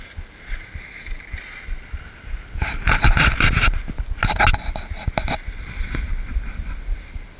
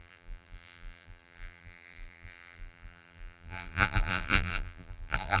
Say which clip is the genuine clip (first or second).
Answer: first